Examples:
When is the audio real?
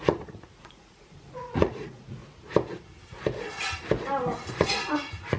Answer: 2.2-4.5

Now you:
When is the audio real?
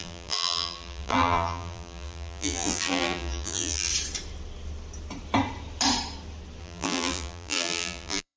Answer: 3.9-6.6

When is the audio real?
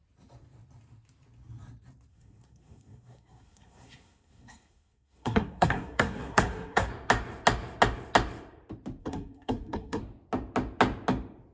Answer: 0.0-2.1; 6.9-9.0; 10.0-11.5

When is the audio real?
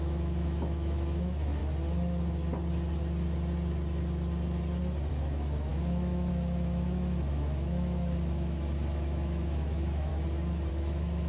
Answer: 1.6-5.1; 10.1-10.7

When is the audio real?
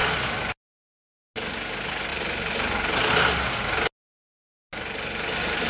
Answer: 0.0-5.7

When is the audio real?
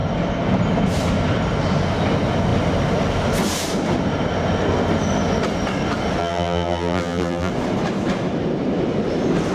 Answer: 0.0-6.2; 7.5-9.5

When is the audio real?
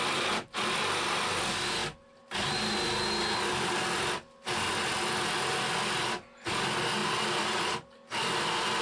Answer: 0.0-8.8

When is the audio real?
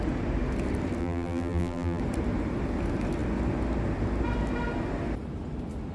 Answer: 0.0-1.0; 2.0-5.9